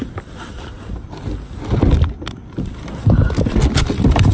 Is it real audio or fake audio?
real